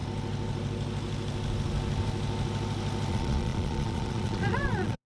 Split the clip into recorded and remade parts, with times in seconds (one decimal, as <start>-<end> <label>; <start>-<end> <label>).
0.0-3.1 recorded; 3.1-5.1 remade